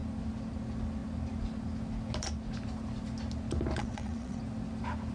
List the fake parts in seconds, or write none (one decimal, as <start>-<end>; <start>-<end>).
3.8-4.4